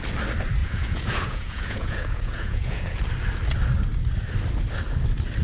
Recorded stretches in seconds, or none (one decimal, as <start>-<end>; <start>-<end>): 0.0-0.6; 3.0-5.4